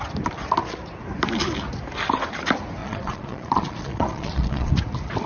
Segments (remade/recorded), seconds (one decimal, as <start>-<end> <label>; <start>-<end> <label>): 0.0-2.8 recorded; 2.8-4.7 remade; 4.7-5.3 recorded